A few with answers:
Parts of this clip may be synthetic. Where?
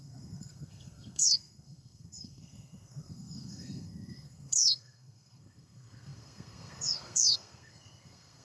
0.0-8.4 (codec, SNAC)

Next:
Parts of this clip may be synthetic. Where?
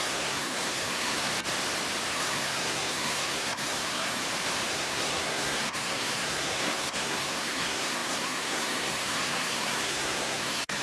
0.0-1.3 (codec, SNAC); 2.1-4.2; 4.7-10.8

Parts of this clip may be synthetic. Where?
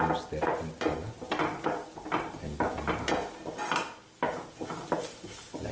none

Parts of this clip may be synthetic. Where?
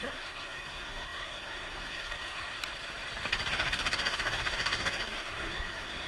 0.0-2.6 (codec, SNAC); 3.5-6.1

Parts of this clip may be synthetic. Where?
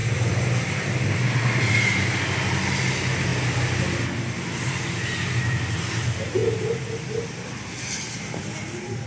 none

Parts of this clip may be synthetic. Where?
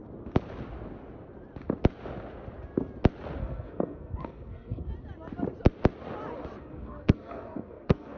3.4-4.9 (codec, SNAC); 6.6-8.2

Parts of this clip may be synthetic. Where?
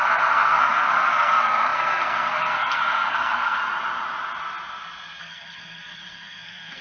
0.0-3.6 (codec, SNAC); 5.2-6.8